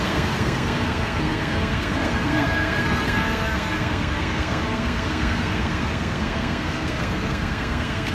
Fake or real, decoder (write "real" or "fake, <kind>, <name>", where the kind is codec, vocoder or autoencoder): fake, codec, SNAC